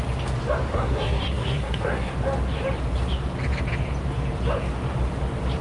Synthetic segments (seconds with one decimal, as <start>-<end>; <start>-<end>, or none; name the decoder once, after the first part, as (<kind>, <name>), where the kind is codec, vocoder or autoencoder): 0.7-2.1 (codec, SNAC)